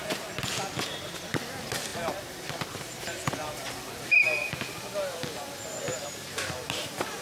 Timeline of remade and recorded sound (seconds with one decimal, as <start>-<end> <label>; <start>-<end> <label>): 0.0-5.9 recorded; 5.9-7.2 remade

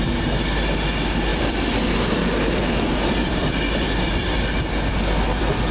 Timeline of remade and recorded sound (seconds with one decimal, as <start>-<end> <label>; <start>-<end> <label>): 0.0-1.3 recorded; 1.3-4.4 remade; 4.4-4.9 recorded; 4.9-5.7 remade